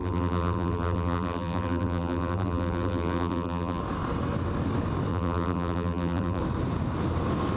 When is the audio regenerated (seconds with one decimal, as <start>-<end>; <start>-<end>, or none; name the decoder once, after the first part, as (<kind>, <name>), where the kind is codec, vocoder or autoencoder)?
0.0-3.8 (vocoder, BigVGAN v2); 5.1-6.4